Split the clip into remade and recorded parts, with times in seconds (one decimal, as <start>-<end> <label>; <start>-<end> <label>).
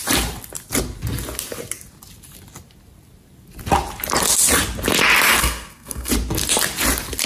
0.0-5.4 recorded; 5.4-6.1 remade; 6.1-7.3 recorded